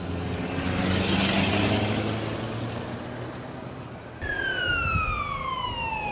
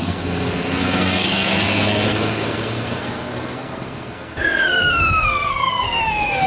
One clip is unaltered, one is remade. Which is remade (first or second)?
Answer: second